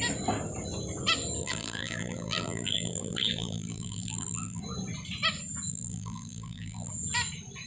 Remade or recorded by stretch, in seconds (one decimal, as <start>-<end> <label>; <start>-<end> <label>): 0.0-1.4 recorded; 1.4-4.6 remade; 4.6-5.7 recorded; 5.7-6.9 remade; 6.9-7.7 recorded